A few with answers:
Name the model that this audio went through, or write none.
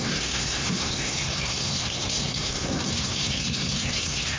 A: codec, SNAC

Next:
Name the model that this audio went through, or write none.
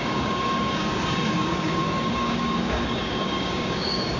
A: codec, DAC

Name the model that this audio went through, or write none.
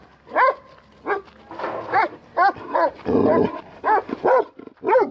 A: none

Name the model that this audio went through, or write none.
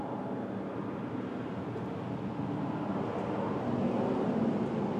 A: none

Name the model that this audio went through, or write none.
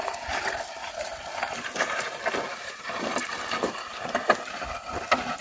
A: none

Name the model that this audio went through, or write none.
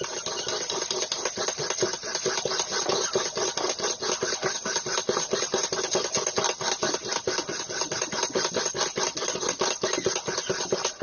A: none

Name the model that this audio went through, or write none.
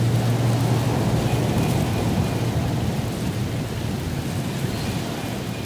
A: none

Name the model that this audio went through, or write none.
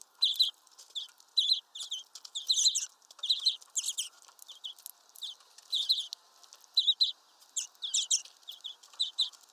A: none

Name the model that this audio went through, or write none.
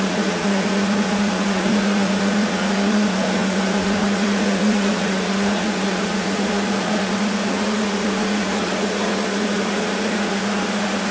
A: vocoder, Vocos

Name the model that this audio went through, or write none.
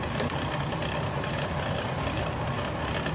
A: none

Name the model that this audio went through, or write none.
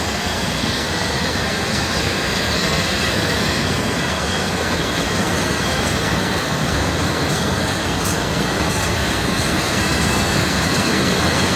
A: codec, SNAC